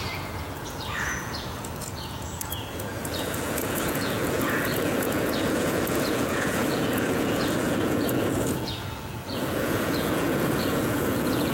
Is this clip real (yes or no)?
no